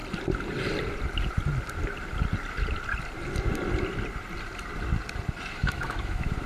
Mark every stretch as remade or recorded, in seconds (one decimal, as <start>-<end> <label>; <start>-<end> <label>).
0.0-5.6 recorded; 5.6-6.5 remade